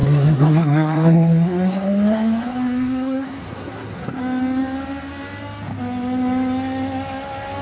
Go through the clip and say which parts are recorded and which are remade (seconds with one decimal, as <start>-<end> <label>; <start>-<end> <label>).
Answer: 0.0-4.2 remade; 4.2-7.6 recorded